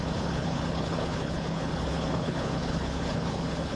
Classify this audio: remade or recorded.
remade